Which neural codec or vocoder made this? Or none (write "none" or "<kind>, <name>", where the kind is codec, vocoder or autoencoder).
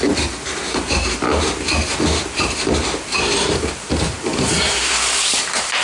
none